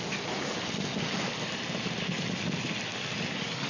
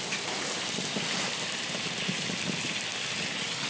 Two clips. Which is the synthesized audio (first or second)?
second